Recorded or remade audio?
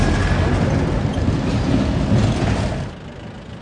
recorded